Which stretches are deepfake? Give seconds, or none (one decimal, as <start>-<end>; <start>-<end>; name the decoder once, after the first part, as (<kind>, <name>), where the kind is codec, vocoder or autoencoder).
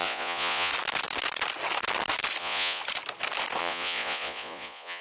0.0-0.7 (vocoder, Vocos); 2.4-2.8; 3.6-5.0